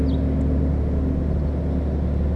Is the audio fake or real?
real